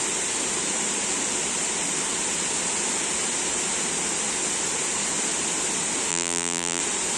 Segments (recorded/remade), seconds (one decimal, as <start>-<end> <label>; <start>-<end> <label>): 0.0-6.1 recorded; 6.1-6.8 remade; 6.8-7.2 recorded